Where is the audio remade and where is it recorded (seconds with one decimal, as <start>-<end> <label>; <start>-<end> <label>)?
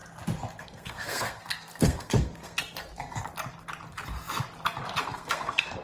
0.0-0.6 recorded; 0.6-2.6 remade; 2.6-5.0 recorded; 5.0-5.8 remade